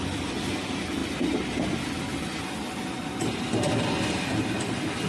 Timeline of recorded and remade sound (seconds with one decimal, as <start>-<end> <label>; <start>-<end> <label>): 0.0-1.0 remade; 1.0-4.1 recorded; 4.1-5.1 remade